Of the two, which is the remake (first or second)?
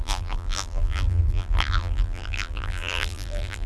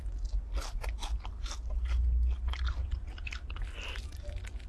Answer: first